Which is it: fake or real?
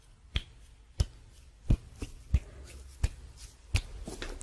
real